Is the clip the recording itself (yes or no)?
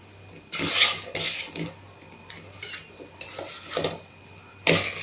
yes